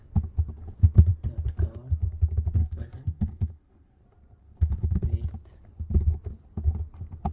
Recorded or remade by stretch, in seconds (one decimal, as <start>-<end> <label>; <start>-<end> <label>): 0.0-2.6 recorded; 2.6-4.0 remade; 4.0-4.4 recorded; 4.4-5.0 remade; 5.0-7.3 recorded